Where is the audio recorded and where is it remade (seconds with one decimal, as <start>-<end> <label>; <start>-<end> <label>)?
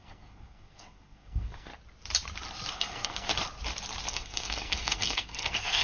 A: 0.0-1.7 remade; 1.7-2.7 recorded; 2.7-3.3 remade; 3.3-4.1 recorded; 4.1-5.8 remade